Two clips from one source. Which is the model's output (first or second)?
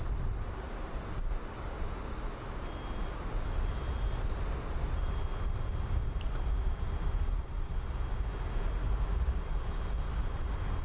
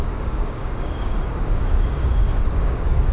second